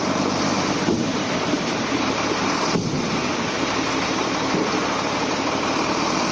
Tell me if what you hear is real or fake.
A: fake